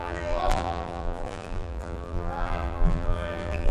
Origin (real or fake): fake